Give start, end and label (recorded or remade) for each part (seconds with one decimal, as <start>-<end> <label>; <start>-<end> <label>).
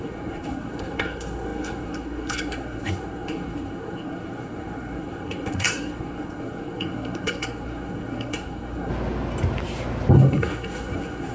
0.0-8.9 remade; 8.9-10.1 recorded; 10.1-11.3 remade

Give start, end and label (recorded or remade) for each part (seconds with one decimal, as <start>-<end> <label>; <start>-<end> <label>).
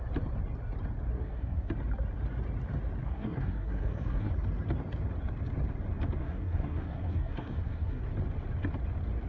0.0-1.1 recorded; 1.1-1.7 remade; 1.7-3.0 recorded; 3.0-4.3 remade; 4.3-6.2 recorded; 6.2-8.0 remade; 8.0-9.3 recorded